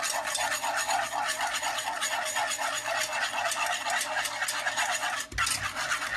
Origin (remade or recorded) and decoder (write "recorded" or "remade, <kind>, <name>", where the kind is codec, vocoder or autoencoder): recorded